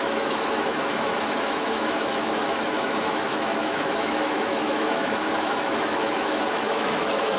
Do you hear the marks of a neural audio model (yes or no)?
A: yes